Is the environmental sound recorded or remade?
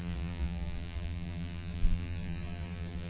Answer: remade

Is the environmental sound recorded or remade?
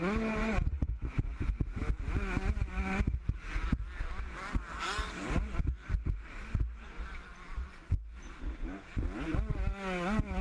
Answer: recorded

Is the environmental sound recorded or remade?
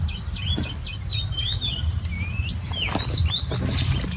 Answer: recorded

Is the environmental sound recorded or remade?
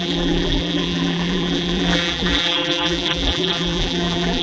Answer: remade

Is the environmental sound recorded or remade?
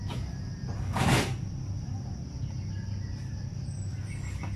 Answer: recorded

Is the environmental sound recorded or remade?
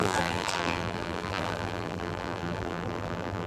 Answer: remade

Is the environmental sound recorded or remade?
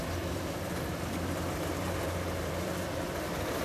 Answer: remade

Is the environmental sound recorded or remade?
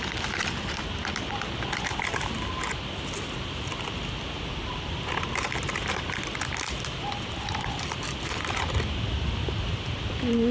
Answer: recorded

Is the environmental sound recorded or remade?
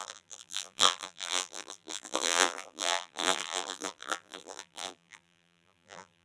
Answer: remade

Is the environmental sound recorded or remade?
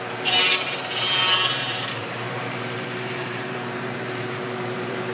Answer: remade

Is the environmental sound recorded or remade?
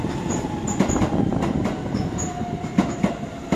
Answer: recorded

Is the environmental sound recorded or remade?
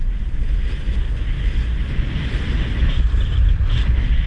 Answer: recorded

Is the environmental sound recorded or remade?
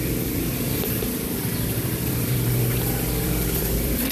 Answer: remade